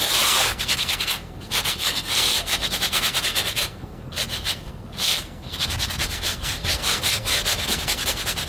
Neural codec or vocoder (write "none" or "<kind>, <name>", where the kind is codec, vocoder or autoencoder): codec, SNAC